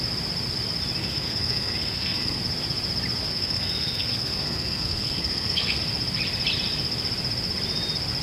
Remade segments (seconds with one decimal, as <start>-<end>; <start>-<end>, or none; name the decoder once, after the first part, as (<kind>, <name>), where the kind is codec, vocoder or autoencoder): 1.0-2.4 (codec, SNAC); 3.2-5.8